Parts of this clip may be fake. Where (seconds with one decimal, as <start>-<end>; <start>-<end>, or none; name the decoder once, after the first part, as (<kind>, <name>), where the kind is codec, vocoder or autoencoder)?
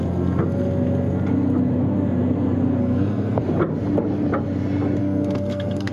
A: 2.8-3.4 (codec, SNAC); 5.0-5.9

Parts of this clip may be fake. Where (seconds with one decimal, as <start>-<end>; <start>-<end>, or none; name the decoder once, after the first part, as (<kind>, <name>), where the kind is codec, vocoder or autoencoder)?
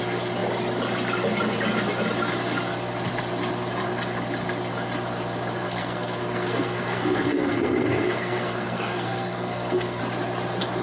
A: 5.6-10.0 (codec, SNAC)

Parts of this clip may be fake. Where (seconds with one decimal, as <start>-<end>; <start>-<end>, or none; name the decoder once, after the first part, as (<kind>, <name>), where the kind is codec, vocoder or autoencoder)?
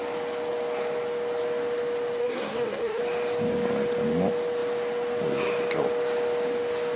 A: 2.2-3.0 (codec, SNAC)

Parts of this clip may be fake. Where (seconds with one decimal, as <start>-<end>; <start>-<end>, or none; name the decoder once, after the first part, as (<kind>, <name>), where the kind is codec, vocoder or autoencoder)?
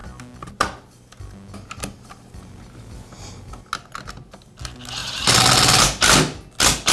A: none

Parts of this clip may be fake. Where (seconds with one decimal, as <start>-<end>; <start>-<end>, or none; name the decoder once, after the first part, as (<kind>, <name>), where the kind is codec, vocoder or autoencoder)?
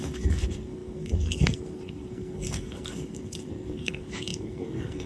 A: 0.0-5.1 (codec, SNAC)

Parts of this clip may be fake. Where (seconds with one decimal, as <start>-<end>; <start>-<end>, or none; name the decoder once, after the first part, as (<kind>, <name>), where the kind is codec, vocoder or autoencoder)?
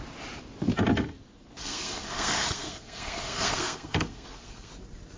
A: 1.6-4.7 (codec, SNAC)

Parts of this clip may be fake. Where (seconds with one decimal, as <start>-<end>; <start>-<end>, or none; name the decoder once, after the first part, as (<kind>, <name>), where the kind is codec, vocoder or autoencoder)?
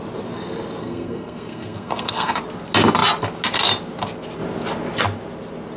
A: 0.8-2.4 (codec, SNAC)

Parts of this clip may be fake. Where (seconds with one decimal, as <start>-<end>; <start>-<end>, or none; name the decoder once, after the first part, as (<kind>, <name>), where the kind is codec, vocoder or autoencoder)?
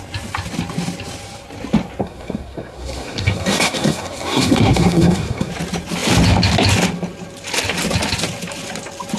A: 2.0-5.5 (codec, SNAC)